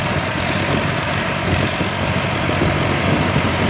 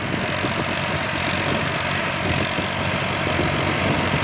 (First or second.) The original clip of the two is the second